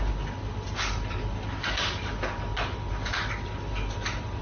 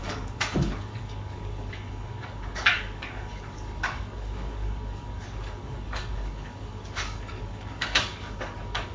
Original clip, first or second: first